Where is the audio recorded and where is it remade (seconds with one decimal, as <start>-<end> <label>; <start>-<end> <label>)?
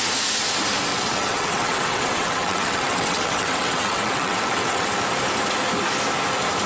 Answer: 0.0-0.9 recorded; 0.9-4.9 remade; 4.9-6.7 recorded